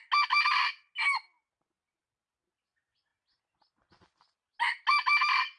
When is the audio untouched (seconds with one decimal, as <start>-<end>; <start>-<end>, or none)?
0.0-5.6